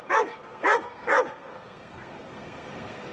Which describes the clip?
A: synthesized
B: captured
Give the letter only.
A